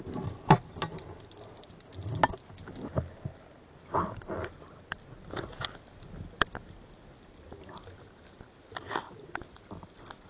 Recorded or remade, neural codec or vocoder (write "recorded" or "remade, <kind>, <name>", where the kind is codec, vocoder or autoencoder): recorded